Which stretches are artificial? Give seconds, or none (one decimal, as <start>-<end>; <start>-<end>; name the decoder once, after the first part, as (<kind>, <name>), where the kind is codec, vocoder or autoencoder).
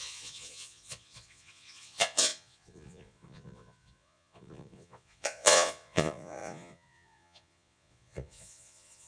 0.0-9.1 (vocoder, Vocos)